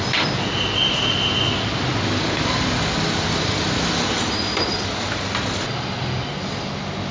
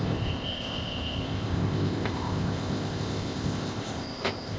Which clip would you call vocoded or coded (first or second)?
second